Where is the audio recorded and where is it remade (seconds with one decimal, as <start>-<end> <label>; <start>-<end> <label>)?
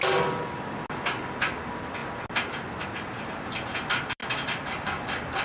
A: 0.0-5.4 recorded